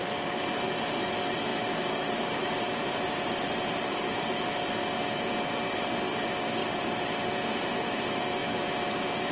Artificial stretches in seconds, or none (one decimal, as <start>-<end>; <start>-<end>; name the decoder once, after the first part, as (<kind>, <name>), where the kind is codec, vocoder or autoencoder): 1.5-4.3 (vocoder, BigVGAN v2); 6.6-7.1